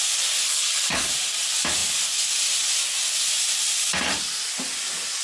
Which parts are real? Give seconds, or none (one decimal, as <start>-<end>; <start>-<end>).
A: 0.0-0.5; 1.1-5.2